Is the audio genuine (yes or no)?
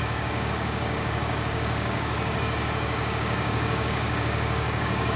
no